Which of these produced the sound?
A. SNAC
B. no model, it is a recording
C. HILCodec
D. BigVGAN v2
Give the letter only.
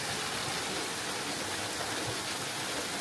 B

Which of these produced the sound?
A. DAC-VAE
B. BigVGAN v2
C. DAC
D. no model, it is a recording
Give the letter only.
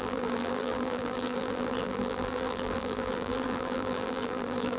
B